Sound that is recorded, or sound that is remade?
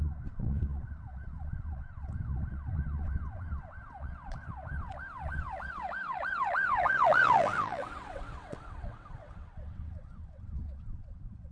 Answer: remade